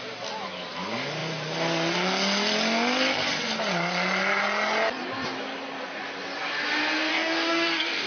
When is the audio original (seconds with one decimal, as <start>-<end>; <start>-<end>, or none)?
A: 0.0-7.1